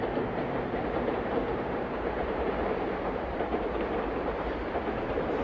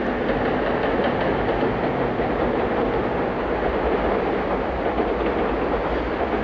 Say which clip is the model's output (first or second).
first